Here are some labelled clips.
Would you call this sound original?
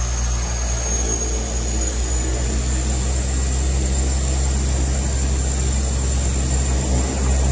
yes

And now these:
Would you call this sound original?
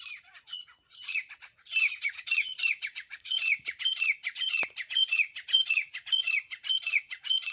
no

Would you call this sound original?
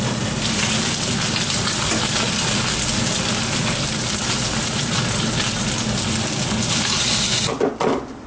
yes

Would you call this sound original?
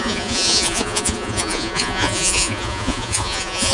no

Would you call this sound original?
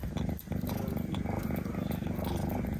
yes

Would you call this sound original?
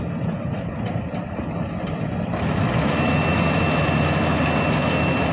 yes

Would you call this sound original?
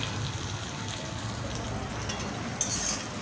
yes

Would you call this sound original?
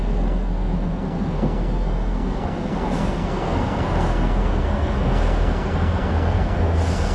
no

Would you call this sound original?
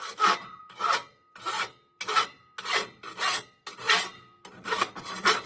yes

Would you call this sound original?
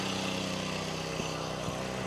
yes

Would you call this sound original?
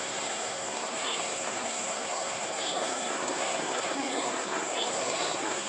no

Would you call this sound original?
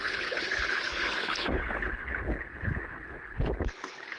no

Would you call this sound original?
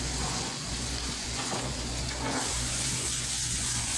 no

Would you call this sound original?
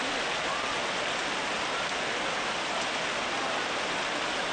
yes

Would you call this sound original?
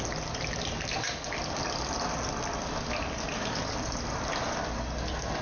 yes